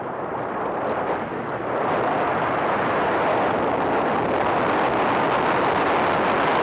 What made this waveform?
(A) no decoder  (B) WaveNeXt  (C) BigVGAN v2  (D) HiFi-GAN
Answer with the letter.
A